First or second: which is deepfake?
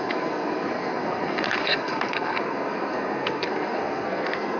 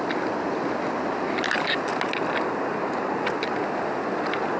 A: first